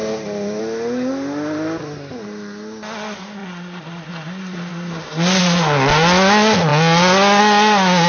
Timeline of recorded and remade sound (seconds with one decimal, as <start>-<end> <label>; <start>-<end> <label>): 0.0-0.6 remade; 0.6-3.4 recorded; 3.4-4.1 remade; 4.1-8.1 recorded